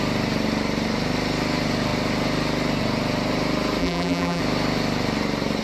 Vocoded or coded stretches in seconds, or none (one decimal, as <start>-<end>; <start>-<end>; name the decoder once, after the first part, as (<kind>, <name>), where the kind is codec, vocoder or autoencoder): 3.8-4.4 (vocoder, BigVGAN v2)